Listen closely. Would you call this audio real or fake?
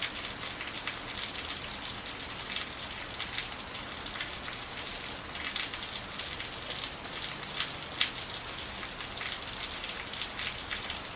real